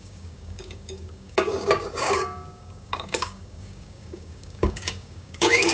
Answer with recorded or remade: remade